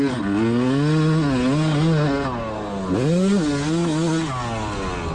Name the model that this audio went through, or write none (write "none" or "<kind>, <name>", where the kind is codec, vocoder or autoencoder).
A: none